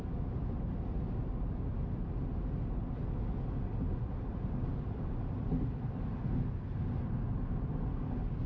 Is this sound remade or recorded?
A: recorded